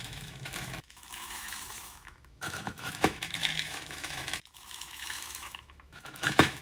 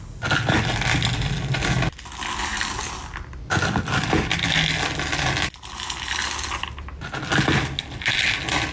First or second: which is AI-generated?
first